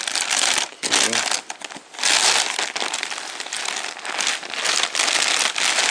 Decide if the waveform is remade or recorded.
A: recorded